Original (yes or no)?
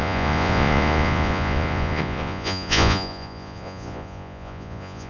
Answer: no